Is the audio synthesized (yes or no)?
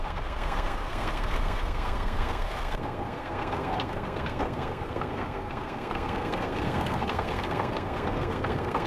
yes